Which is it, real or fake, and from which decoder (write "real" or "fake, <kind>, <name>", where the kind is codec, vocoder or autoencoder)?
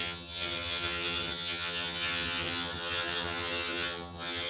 fake, vocoder, HiFi-GAN